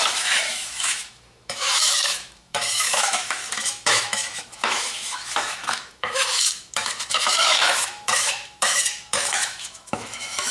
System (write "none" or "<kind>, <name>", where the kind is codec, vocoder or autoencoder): autoencoder, DAC-VAE